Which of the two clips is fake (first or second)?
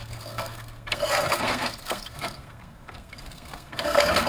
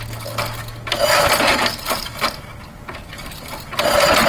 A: first